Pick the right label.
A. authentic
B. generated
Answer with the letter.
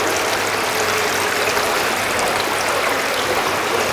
A